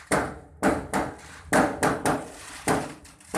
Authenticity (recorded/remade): recorded